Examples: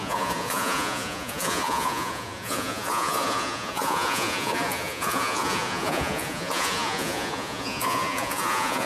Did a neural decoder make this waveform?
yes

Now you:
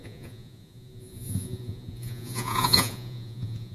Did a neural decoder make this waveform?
yes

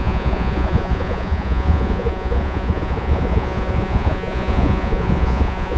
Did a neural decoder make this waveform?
yes